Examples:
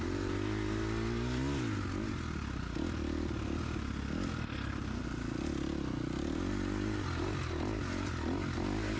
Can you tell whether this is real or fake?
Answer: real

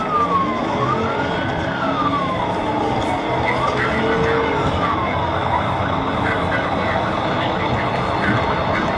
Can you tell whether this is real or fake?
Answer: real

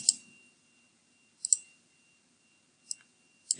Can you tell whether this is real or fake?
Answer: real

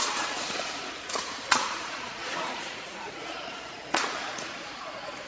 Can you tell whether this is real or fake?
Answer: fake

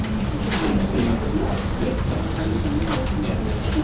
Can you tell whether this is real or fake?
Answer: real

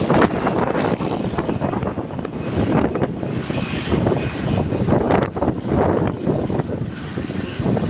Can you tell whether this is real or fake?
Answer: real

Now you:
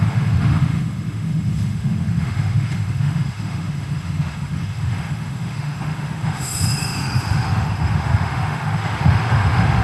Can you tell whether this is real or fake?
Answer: fake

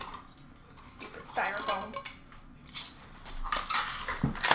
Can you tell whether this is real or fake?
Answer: real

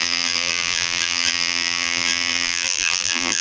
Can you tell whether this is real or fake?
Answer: fake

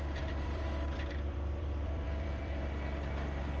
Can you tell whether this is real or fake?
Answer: fake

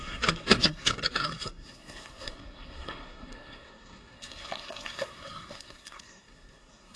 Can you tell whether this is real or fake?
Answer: fake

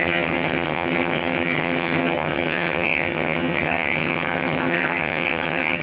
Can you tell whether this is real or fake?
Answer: fake